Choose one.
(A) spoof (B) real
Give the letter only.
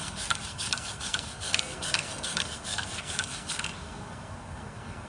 A